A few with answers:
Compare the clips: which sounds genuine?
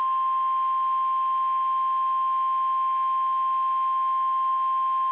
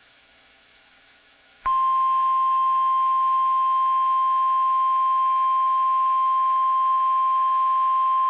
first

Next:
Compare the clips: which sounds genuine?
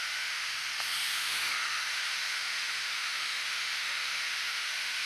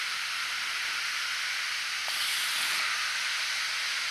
second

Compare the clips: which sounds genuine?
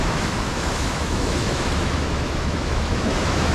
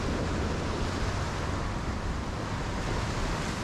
second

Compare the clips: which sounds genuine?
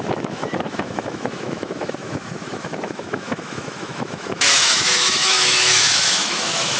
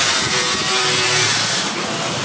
second